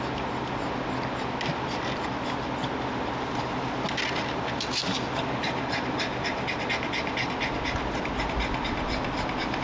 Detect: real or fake real